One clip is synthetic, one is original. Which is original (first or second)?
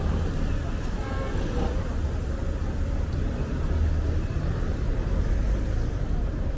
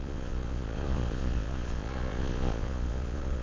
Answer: first